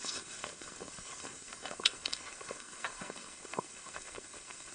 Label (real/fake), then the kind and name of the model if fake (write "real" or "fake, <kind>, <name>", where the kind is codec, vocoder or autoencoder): fake, codec, SNAC